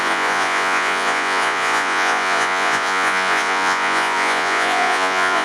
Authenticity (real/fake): fake